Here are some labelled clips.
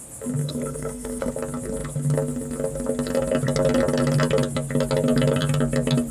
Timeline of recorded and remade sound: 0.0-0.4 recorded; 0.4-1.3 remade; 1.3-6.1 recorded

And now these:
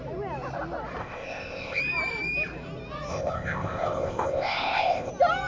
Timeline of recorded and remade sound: 0.0-1.0 recorded; 1.0-1.8 remade; 1.8-3.1 recorded; 3.1-5.1 remade; 5.1-5.5 recorded

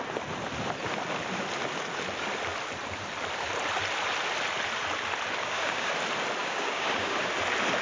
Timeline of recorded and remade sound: 0.0-5.4 recorded; 5.4-5.9 remade; 5.9-6.4 recorded; 6.4-7.2 remade; 7.2-7.8 recorded

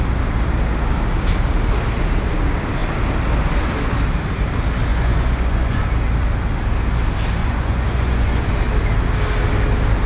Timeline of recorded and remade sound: 0.0-4.9 recorded; 4.9-5.8 remade; 5.8-7.4 recorded; 7.4-8.5 remade; 8.5-10.1 recorded

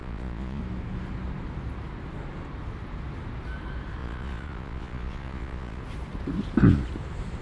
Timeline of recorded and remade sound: 0.0-0.6 remade; 0.6-4.0 recorded; 4.0-5.8 remade; 5.8-7.4 recorded

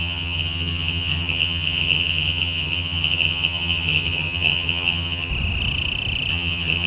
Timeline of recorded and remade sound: 0.0-5.3 remade; 5.3-6.3 recorded; 6.3-6.9 remade

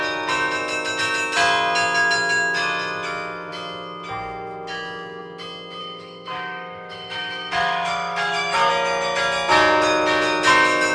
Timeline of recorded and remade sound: 0.0-5.8 recorded; 5.8-8.7 remade; 8.7-10.9 recorded

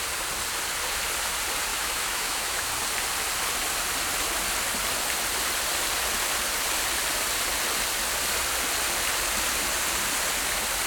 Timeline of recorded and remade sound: 0.0-1.7 recorded; 1.7-2.7 remade; 2.7-10.9 recorded